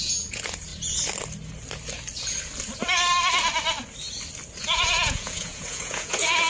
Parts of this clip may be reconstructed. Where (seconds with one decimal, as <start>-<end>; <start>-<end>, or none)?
0.0-0.7; 4.6-6.5